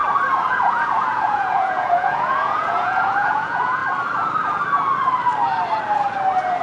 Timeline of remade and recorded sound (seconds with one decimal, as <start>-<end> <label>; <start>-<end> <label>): 0.0-0.5 recorded; 0.5-3.8 remade; 3.8-6.6 recorded